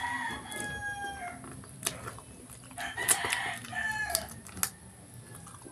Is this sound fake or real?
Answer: real